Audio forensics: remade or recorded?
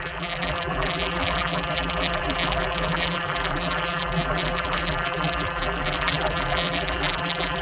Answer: remade